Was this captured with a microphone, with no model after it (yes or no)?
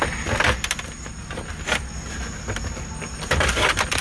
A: yes